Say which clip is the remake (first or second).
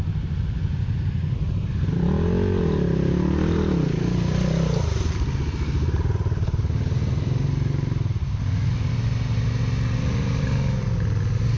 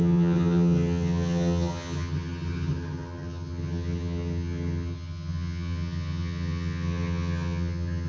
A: second